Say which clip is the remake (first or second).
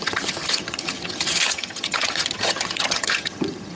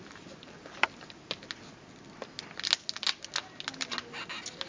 first